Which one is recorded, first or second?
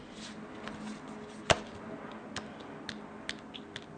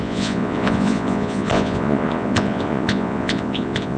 first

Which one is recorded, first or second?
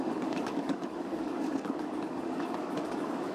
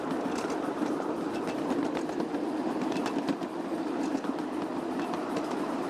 second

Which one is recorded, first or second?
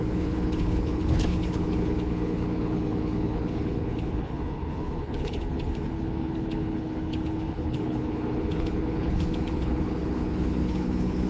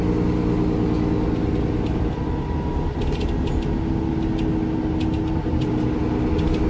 second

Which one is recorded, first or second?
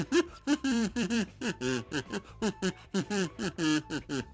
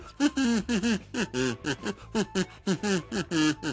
second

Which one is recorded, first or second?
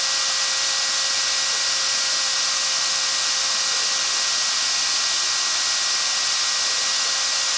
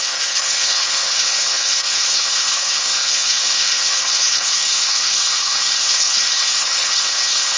first